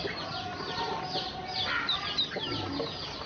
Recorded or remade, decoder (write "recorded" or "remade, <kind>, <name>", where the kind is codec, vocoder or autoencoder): recorded